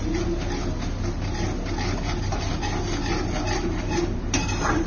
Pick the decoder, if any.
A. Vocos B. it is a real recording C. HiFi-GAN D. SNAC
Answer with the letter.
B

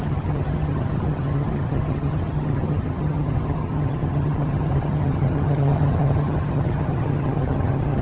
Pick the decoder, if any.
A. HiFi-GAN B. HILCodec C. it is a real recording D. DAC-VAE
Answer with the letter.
A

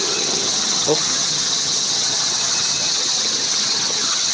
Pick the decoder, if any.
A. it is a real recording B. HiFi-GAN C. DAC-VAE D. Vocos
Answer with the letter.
B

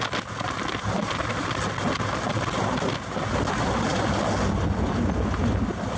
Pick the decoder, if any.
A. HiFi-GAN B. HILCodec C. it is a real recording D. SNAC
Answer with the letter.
C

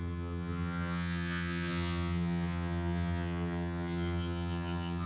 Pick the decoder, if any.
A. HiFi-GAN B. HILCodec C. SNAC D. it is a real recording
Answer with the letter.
A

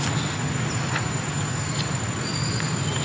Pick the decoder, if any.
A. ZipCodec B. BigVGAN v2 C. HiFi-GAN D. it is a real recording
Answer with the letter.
D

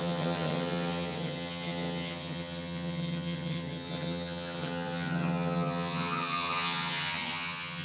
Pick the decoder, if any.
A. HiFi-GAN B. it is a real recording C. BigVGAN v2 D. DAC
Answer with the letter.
A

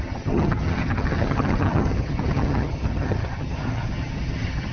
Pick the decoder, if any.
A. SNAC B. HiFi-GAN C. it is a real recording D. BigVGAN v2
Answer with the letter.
B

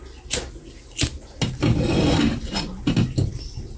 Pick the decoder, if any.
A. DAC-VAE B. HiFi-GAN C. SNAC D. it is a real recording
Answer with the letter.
D